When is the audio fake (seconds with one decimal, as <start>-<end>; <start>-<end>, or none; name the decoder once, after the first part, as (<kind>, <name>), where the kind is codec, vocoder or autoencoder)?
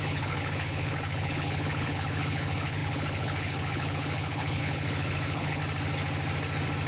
0.0-5.6 (codec, HILCodec)